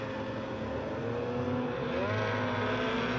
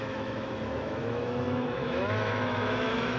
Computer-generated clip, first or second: second